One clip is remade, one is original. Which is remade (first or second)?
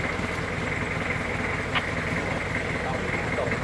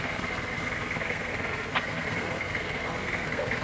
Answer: second